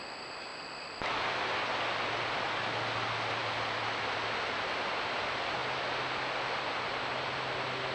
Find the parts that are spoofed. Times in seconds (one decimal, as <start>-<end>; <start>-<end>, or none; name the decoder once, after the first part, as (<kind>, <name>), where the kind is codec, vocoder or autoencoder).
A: none